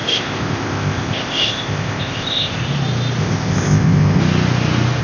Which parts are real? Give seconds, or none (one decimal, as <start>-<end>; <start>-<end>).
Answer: 2.6-3.2; 4.2-5.0